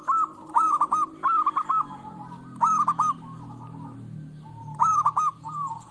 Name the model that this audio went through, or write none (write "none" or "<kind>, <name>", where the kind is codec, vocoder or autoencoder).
none